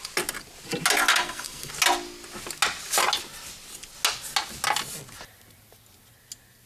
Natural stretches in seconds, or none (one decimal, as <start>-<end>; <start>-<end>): 0.0-1.1; 1.7-6.7